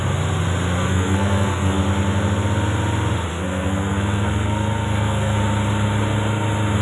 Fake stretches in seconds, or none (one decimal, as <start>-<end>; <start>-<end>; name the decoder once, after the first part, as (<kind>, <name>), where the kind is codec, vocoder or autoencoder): 0.8-1.8 (codec, SNAC); 3.3-5.4